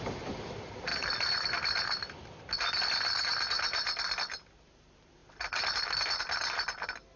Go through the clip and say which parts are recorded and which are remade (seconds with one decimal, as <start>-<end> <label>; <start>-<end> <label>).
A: 0.0-7.2 remade